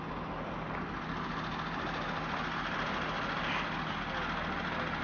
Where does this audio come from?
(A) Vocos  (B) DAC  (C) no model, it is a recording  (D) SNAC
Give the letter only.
C